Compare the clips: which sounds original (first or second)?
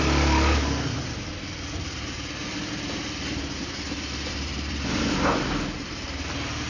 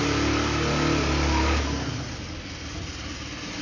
second